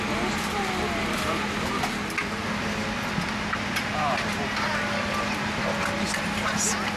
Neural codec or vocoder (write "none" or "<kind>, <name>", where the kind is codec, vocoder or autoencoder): none